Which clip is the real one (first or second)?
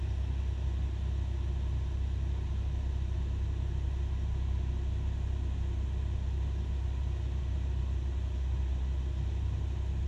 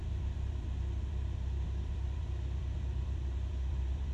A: first